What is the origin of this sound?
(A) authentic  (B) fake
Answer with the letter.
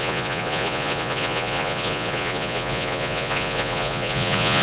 B